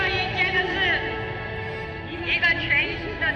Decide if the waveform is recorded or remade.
recorded